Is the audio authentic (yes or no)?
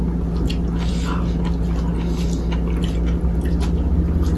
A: yes